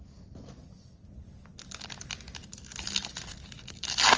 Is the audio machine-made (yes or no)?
no